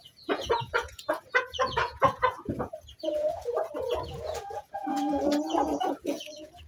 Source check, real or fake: fake